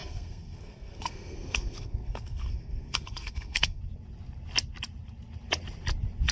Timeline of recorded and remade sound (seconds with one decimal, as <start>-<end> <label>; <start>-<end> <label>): 0.0-3.8 remade; 3.8-6.3 recorded